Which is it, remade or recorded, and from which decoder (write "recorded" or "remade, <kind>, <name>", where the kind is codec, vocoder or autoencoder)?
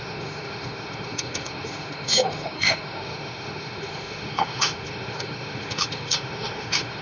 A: remade, autoencoder, DAC-VAE